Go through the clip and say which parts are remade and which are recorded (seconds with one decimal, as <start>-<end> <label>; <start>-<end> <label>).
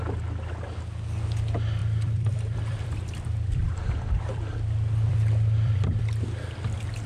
0.0-1.8 recorded; 1.8-6.0 remade; 6.0-7.1 recorded